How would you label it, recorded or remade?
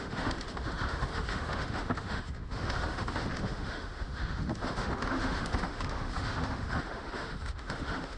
remade